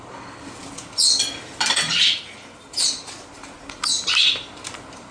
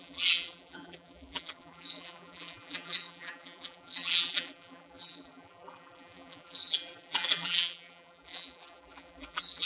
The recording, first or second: first